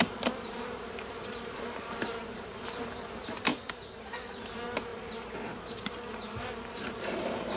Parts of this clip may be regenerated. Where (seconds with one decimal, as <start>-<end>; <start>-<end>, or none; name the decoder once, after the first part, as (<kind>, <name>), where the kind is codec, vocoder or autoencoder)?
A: 0.0-7.6 (vocoder, BigVGAN v2)